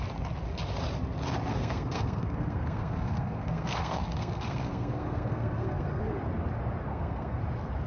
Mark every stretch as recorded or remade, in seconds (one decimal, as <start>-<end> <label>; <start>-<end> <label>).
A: 0.0-1.5 recorded; 1.5-6.0 remade; 6.0-6.9 recorded; 6.9-7.4 remade; 7.4-7.9 recorded